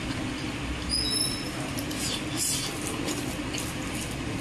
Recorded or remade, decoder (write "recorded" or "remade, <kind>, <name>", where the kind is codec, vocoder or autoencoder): recorded